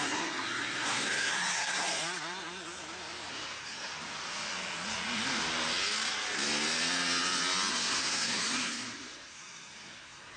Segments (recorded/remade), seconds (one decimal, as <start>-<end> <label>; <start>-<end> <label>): 0.0-2.0 remade; 2.0-3.3 recorded; 3.3-3.9 remade; 3.9-7.7 recorded; 7.7-10.4 remade